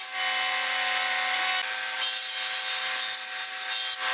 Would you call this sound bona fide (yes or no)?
yes